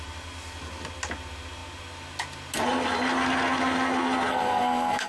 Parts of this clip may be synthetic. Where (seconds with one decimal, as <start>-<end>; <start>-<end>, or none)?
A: 4.3-5.1